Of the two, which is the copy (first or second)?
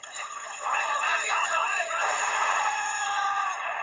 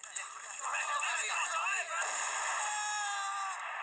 first